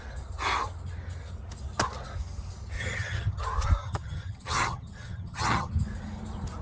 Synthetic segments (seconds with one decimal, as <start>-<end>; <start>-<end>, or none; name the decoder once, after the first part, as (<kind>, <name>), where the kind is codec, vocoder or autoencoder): 2.8-3.4 (vocoder, HiFi-GAN); 3.8-5.7